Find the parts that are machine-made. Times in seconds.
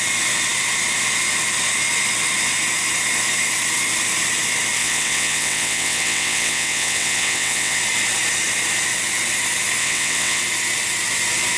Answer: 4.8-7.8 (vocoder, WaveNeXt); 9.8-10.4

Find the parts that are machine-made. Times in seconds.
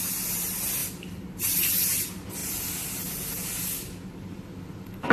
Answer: 0.8-1.7 (vocoder, BigVGAN v2); 2.4-3.3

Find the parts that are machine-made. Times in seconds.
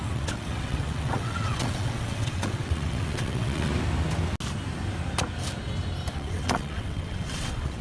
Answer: 0.0-3.7 (vocoder, WaveNeXt); 6.1-7.8